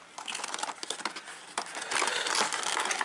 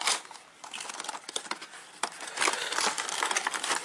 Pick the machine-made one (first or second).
second